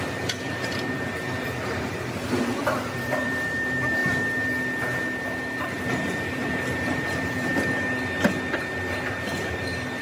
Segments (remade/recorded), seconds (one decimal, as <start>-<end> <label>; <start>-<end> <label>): 0.0-4.0 remade; 4.0-5.7 recorded; 5.7-7.5 remade; 7.5-9.1 recorded; 9.1-10.0 remade